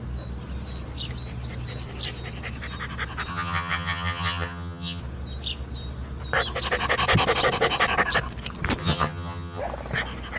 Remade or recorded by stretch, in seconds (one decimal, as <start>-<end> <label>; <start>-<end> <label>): 0.0-3.3 recorded; 3.3-5.0 remade; 5.0-8.8 recorded; 8.8-9.6 remade; 9.6-10.4 recorded